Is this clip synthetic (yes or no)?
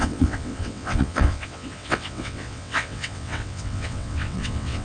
yes